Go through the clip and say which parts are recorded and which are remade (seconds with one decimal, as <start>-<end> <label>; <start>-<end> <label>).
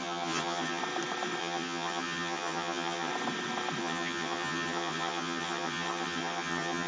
0.0-0.8 remade; 0.8-1.4 recorded; 1.4-3.1 remade; 3.1-3.8 recorded; 3.8-6.9 remade